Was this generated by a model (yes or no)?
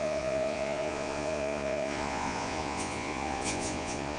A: yes